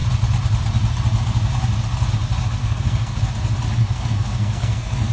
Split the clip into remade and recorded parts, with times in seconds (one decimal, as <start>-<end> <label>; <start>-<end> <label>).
0.0-2.6 recorded; 2.6-3.2 remade; 3.2-3.8 recorded; 3.8-5.1 remade